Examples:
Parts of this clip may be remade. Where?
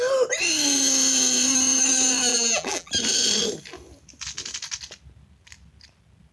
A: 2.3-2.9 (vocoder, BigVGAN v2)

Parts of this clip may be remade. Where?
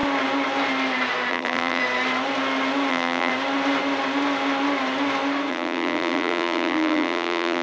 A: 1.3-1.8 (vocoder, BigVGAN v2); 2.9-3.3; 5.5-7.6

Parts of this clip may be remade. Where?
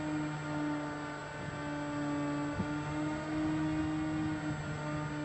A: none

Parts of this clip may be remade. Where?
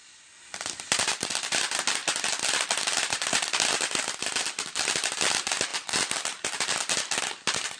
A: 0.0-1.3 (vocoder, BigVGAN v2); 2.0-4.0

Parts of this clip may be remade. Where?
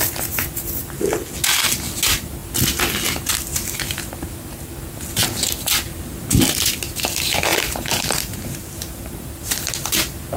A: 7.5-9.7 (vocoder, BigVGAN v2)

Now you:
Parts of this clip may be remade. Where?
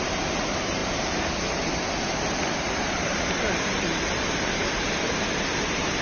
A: 0.0-6.0 (vocoder, BigVGAN v2)